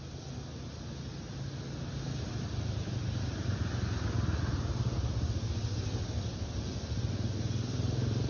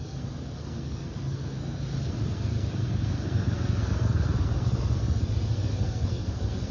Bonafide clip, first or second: first